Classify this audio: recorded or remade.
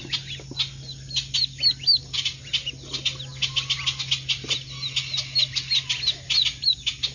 recorded